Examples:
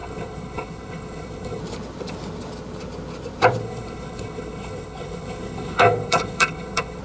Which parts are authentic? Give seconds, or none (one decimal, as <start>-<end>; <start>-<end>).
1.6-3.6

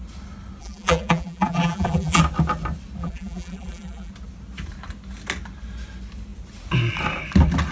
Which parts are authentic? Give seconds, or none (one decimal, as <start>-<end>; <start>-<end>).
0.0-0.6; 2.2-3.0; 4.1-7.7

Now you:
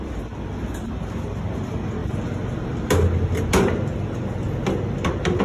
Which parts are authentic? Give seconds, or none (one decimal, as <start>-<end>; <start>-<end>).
0.0-5.4

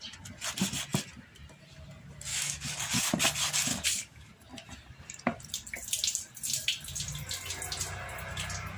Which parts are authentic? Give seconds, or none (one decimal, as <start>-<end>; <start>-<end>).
0.0-2.3; 3.0-3.7; 4.3-8.8

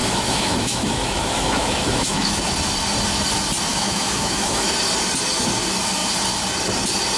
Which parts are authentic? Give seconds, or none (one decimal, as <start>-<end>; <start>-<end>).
2.4-3.7; 4.7-7.2